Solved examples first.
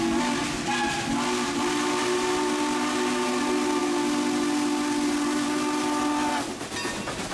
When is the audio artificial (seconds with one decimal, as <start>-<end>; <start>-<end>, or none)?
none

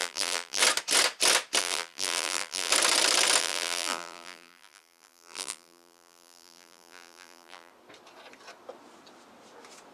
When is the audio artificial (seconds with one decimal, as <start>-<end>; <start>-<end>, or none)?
0.0-0.6; 1.6-2.7; 3.4-7.7

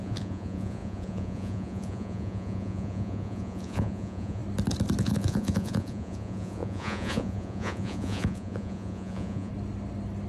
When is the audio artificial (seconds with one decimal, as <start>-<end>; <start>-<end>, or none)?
0.0-4.4; 5.0-9.5

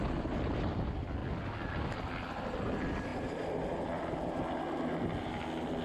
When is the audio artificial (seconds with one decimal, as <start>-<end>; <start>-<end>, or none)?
none

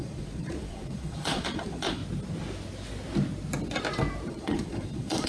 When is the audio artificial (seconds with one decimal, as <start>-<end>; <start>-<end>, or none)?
0.0-2.0; 4.3-5.3

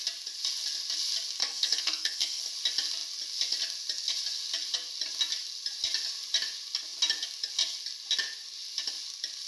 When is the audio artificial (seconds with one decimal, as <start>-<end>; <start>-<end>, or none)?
1.4-2.4

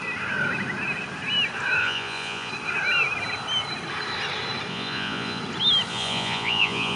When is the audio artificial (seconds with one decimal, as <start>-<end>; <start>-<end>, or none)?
1.8-2.5; 4.7-5.4; 5.9-7.0